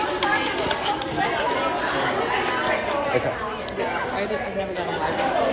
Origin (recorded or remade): recorded